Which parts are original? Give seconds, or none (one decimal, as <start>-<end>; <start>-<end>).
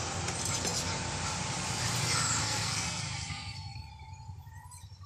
0.0-2.4; 3.9-5.1